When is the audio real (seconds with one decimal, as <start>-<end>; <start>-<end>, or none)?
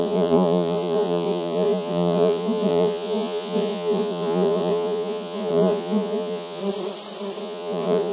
6.6-7.4